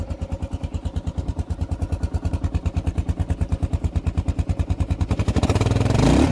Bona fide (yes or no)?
yes